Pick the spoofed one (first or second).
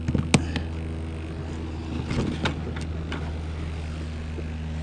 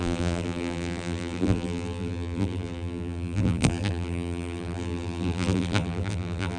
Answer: second